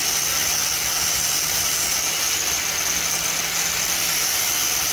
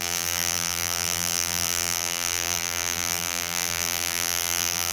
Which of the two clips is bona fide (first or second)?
first